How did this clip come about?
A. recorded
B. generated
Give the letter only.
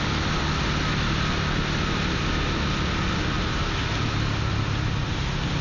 A